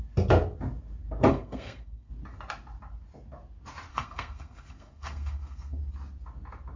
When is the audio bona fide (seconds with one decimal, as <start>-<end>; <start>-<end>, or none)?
0.0-1.3; 2.1-3.9; 5.8-6.8